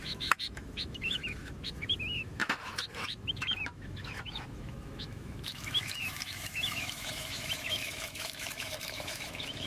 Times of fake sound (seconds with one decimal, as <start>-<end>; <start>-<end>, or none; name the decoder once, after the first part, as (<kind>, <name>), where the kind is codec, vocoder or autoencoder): 0.0-9.7 (autoencoder, DAC-VAE)